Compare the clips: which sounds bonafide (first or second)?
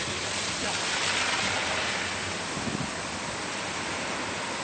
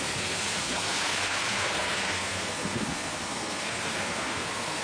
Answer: first